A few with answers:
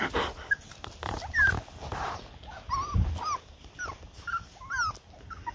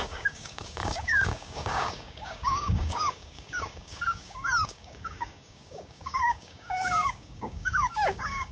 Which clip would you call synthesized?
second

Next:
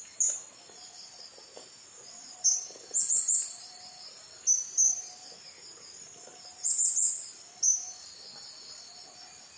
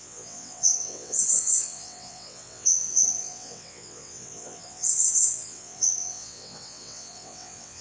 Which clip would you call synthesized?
second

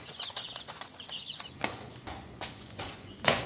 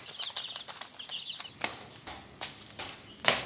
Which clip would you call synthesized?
first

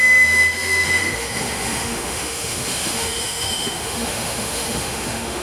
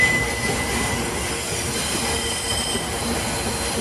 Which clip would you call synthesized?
first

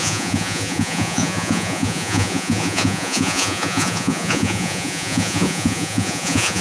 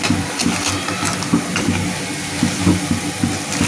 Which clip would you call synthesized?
first